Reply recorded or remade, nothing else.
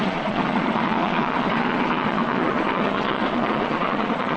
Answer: remade